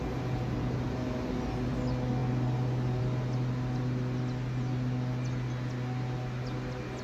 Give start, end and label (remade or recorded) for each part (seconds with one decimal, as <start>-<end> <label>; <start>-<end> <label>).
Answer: 0.0-7.0 recorded